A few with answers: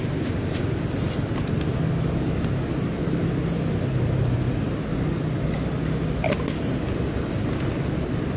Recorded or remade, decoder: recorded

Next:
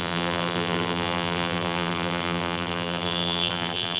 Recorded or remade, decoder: remade, vocoder, BigVGAN v2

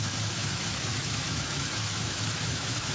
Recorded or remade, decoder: remade, autoencoder, DAC-VAE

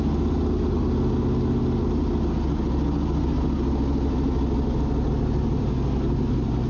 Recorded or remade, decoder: recorded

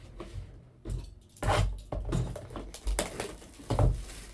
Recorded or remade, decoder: recorded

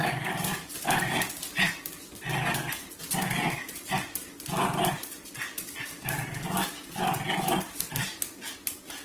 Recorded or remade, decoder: recorded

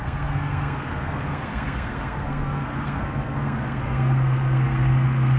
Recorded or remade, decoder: remade, codec, SNAC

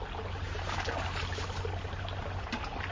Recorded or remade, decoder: recorded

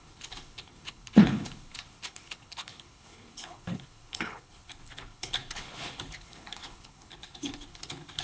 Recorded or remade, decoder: remade, codec, HILCodec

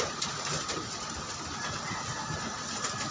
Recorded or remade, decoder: recorded